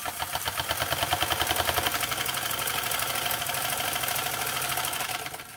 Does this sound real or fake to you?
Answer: real